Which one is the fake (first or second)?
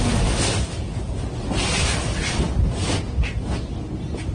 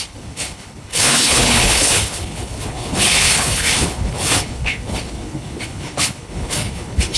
second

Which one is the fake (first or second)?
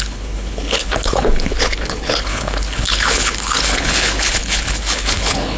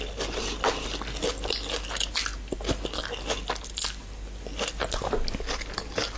first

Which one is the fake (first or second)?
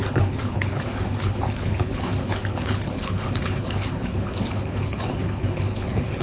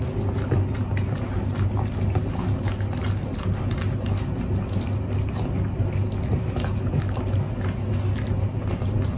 first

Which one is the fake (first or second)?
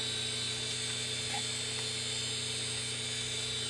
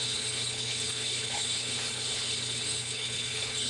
second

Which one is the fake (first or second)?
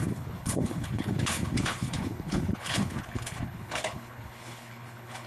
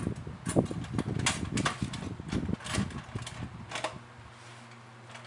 first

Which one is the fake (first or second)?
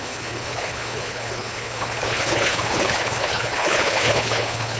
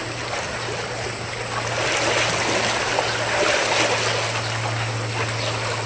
first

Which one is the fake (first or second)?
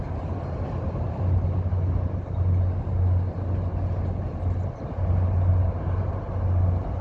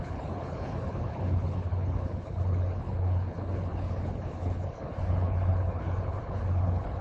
second